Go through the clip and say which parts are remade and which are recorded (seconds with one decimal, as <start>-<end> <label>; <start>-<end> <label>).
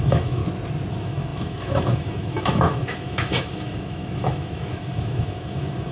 0.0-0.4 remade; 0.4-0.9 recorded; 0.9-5.9 remade